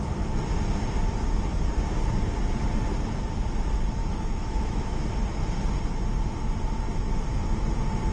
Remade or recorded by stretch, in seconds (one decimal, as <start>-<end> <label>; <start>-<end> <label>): 0.0-4.0 recorded; 4.0-5.0 remade; 5.0-8.1 recorded